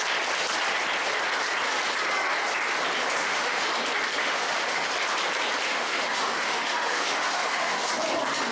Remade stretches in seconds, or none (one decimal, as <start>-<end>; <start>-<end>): 3.2-3.7; 4.2-4.9; 5.7-7.9